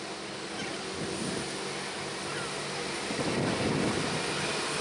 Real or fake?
real